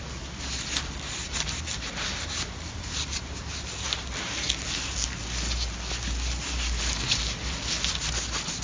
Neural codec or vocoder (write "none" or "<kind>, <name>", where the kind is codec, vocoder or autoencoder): none